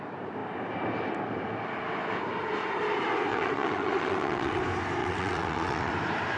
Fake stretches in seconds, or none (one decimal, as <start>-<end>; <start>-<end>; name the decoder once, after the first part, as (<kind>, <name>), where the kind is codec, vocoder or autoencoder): 3.3-4.6 (vocoder, WaveNeXt); 5.0-5.9